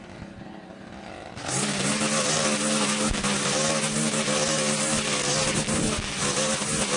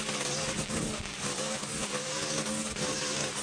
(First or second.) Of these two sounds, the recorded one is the first